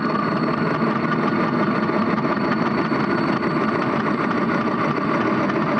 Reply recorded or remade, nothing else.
recorded